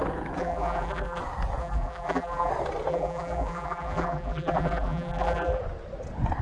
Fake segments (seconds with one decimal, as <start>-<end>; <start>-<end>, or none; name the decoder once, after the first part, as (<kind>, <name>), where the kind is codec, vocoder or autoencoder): 0.4-1.2 (vocoder, BigVGAN v2); 1.6-2.5; 2.9-5.6